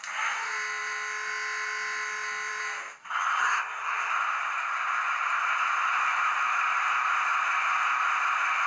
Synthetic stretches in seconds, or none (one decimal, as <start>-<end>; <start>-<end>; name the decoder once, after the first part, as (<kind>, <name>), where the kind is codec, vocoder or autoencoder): 3.4-4.1 (codec, SNAC)